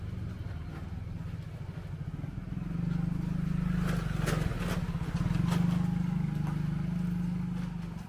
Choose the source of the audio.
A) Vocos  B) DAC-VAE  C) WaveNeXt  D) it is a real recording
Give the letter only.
D